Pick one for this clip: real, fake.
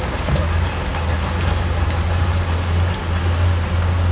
real